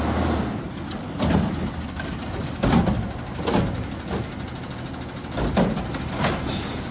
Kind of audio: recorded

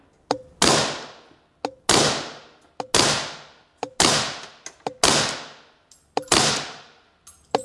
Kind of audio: recorded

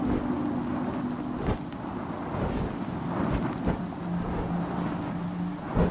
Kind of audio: recorded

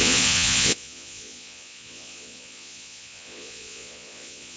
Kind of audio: remade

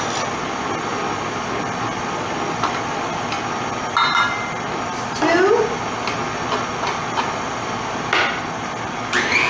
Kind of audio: recorded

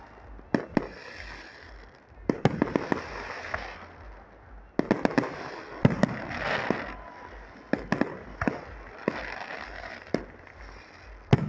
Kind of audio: recorded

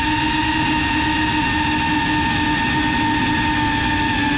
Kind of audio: recorded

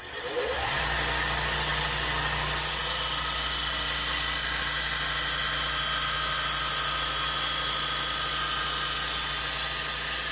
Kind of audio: recorded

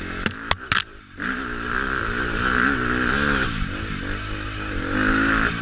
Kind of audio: recorded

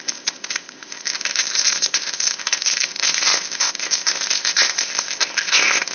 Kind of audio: remade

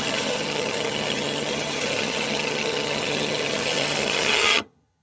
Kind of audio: remade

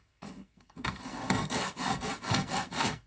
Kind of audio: remade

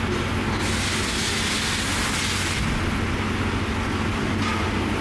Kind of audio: recorded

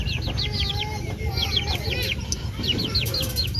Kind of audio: recorded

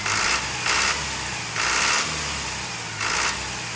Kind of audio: recorded